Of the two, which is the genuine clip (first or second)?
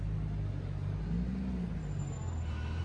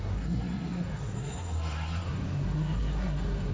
first